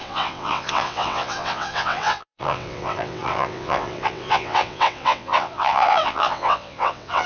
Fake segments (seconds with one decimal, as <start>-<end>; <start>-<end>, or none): 0.0-7.3